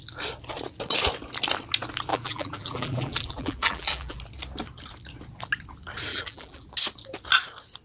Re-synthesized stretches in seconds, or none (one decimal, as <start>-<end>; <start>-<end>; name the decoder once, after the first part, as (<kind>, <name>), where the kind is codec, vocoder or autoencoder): 2.1-4.2 (vocoder, BigVGAN v2); 6.1-6.7

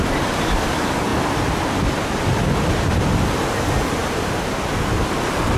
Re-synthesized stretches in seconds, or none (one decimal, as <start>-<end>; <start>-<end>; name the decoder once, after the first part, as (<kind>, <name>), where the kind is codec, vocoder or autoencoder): none

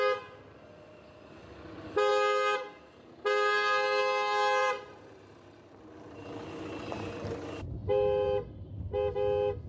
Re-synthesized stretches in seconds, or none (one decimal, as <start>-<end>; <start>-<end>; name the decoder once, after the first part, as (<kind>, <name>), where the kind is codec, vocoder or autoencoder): 4.6-5.8 (vocoder, BigVGAN v2); 7.8-8.8

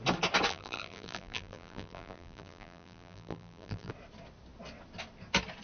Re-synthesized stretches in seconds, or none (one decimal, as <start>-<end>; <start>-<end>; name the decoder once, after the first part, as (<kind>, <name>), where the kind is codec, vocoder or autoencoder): 0.5-3.9 (vocoder, BigVGAN v2)

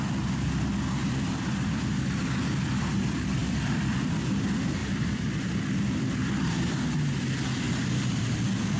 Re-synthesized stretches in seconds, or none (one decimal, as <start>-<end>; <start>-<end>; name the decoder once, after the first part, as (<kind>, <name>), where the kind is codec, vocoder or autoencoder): 3.4-4.1 (vocoder, BigVGAN v2); 4.8-5.7

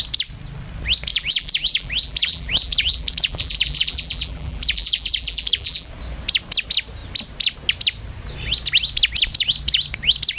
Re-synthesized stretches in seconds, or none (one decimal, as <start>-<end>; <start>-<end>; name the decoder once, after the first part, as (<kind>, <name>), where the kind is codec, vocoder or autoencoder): 1.1-5.9 (vocoder, BigVGAN v2)

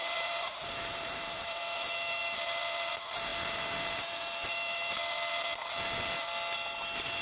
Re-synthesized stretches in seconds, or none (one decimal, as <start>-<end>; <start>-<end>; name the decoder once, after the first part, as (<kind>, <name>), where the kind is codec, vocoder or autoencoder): 0.0-1.6 (vocoder, BigVGAN v2)

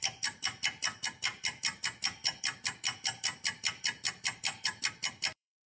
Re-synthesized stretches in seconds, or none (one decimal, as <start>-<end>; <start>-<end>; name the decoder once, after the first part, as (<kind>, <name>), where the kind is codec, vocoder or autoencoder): 0.0-5.7 (vocoder, BigVGAN v2)